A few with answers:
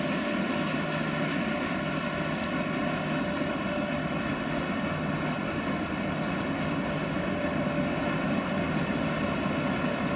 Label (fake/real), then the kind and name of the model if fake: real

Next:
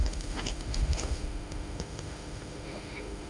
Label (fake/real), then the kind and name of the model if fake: fake, autoencoder, DAC-VAE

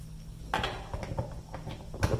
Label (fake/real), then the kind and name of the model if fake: real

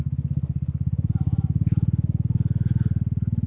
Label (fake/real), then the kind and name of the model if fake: real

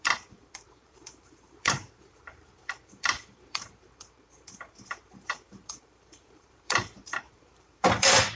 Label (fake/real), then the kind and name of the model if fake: fake, vocoder, BigVGAN v2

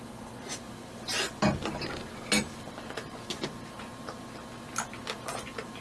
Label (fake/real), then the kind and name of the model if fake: real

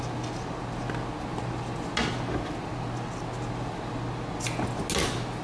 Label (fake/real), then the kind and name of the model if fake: real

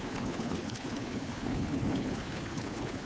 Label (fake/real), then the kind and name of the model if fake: fake, codec, HILCodec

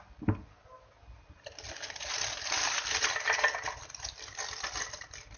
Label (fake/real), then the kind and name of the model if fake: real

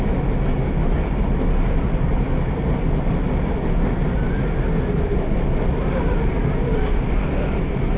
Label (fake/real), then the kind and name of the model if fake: real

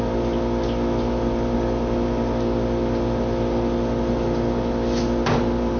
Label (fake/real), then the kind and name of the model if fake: real